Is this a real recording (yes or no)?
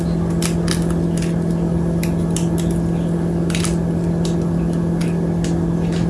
yes